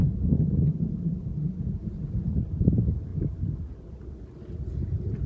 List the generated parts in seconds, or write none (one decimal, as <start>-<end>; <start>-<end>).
none